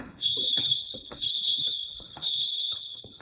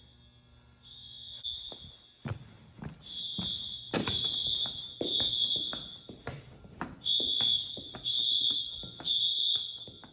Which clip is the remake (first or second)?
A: first